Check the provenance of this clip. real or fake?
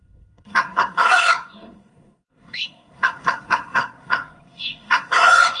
fake